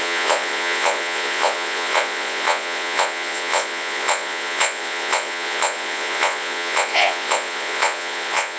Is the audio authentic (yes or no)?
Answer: no